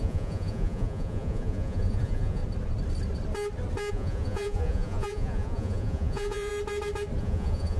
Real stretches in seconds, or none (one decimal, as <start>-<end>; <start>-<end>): 2.4-3.9; 6.5-7.2

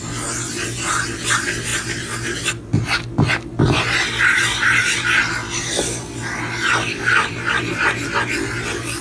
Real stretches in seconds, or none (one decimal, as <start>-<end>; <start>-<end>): 0.0-9.0